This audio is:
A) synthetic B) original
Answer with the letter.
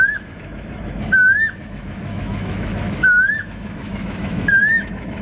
A